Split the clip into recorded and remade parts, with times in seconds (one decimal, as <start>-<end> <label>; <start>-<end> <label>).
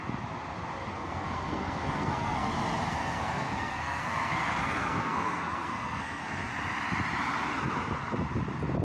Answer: 0.0-0.9 recorded; 0.9-2.5 remade; 2.5-2.9 recorded; 2.9-6.5 remade; 6.5-8.8 recorded